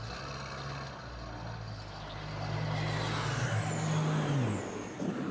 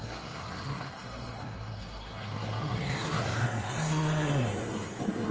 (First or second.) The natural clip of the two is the first